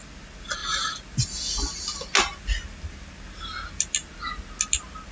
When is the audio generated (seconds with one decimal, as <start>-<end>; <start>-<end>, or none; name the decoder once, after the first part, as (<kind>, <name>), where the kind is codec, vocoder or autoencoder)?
none